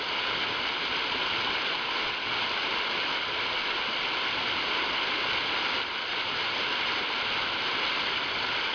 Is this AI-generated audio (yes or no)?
no